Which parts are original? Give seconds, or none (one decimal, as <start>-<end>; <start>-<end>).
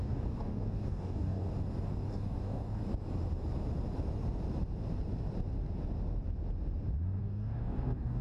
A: 1.5-2.1; 2.8-7.2